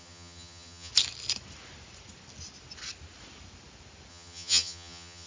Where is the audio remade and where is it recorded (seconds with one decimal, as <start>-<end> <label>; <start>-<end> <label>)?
0.0-0.9 remade; 0.9-4.1 recorded; 4.1-5.3 remade